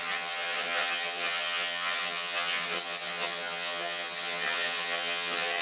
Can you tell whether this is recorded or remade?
remade